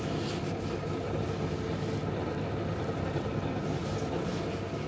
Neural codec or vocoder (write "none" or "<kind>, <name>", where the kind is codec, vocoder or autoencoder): none